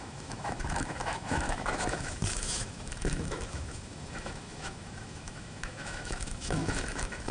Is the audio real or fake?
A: fake